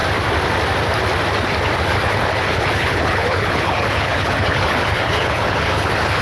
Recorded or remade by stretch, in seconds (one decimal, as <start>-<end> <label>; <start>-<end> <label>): 0.0-1.8 recorded; 1.8-6.2 remade